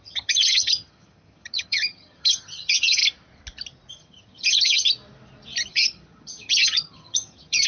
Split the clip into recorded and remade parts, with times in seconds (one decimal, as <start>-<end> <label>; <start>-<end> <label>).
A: 0.0-3.0 remade; 3.0-3.9 recorded; 3.9-5.0 remade; 5.0-5.7 recorded; 5.7-7.7 remade